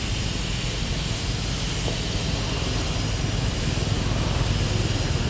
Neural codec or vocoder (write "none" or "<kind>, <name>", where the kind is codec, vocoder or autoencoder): none